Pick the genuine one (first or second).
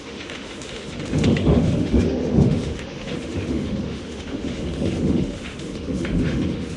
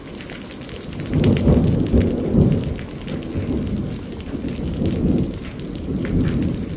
second